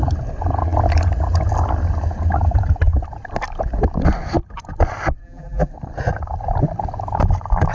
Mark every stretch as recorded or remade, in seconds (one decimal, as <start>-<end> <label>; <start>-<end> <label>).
0.0-5.2 recorded; 5.2-5.7 remade; 5.7-7.7 recorded